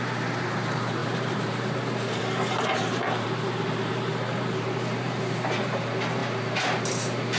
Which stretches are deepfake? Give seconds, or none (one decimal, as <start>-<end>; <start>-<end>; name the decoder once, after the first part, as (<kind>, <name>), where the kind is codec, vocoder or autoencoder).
0.0-7.4 (vocoder, BigVGAN v2)